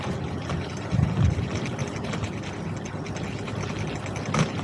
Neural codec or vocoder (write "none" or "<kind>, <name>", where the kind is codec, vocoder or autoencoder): none